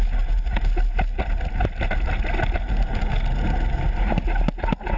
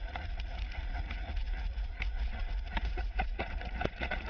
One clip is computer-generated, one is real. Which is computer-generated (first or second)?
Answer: second